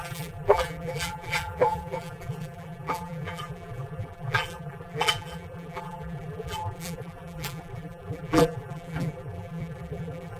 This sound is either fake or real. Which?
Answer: fake